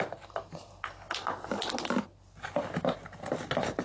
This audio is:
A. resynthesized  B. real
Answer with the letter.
B